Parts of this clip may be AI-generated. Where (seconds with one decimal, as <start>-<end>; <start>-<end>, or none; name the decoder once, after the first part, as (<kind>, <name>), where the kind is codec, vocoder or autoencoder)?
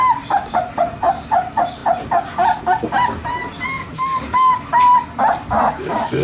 3.7-4.5 (autoencoder, DAC-VAE)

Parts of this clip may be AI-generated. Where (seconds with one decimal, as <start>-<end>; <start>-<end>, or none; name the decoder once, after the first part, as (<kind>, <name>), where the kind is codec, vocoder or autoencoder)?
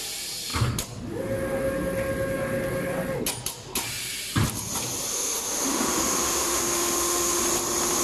5.1-7.4 (autoencoder, DAC-VAE)